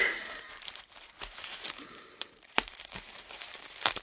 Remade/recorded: remade